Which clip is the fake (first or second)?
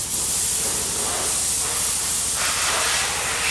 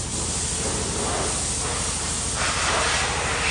first